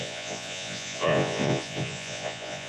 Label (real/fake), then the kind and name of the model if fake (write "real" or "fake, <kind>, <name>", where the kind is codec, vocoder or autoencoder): fake, vocoder, Vocos